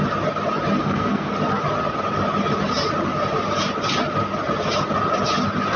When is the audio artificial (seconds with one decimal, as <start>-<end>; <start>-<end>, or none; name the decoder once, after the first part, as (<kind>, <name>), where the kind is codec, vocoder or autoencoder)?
0.8-1.3 (codec, SNAC)